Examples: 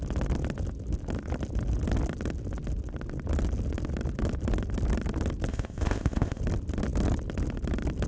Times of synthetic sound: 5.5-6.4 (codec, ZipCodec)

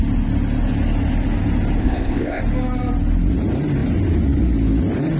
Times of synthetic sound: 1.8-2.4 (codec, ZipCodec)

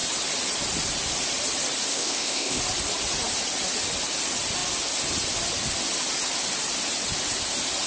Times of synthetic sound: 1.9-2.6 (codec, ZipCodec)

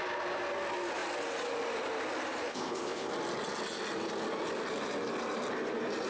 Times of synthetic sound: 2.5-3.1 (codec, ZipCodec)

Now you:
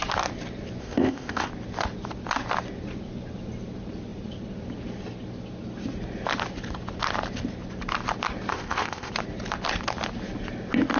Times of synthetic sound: 0.8-1.5 (codec, ZipCodec); 8.5-9.1

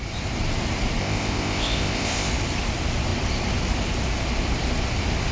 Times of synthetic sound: 1.0-2.3 (codec, ZipCodec)

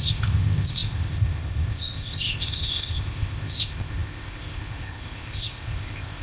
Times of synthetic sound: 0.0-6.2 (codec, ZipCodec)